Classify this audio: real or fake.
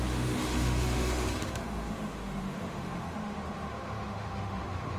fake